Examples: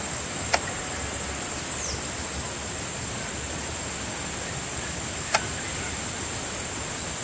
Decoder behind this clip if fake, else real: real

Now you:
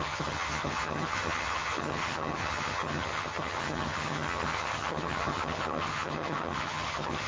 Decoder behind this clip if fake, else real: fake, vocoder, HiFi-GAN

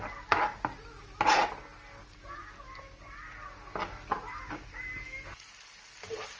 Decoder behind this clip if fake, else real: real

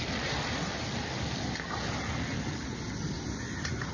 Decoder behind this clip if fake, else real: real